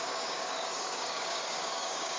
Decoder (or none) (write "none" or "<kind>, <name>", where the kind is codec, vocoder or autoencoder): codec, DAC